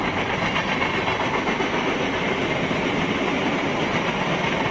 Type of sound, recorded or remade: recorded